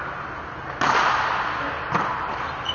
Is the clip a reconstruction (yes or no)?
no